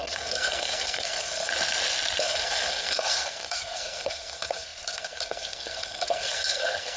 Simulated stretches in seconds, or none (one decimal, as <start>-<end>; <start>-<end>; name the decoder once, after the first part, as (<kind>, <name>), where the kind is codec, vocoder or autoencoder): 0.0-1.5 (codec, SNAC); 2.2-7.0